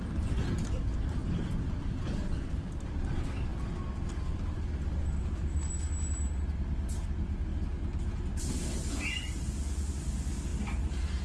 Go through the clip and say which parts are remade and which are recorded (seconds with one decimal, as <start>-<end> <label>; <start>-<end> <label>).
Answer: 0.0-11.2 recorded